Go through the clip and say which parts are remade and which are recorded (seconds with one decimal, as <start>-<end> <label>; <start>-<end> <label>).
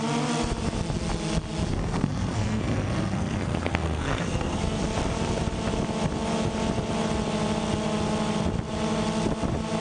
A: 0.0-1.7 recorded; 1.7-4.8 remade; 4.8-9.8 recorded